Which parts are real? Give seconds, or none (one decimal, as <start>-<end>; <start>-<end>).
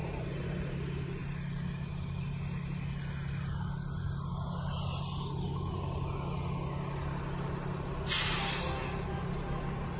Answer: 0.7-10.0